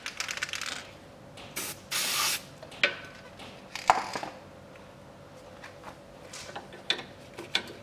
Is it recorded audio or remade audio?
recorded